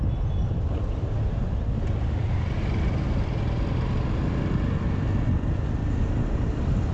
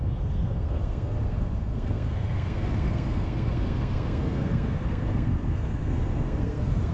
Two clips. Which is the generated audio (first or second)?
second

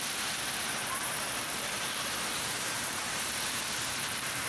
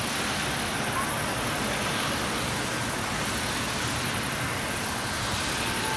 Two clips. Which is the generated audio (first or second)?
first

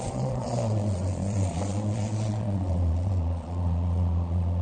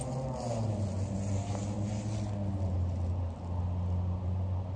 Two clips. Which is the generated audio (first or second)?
first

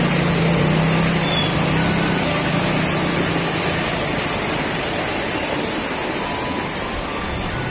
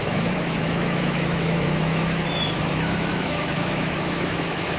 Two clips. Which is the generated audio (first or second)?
second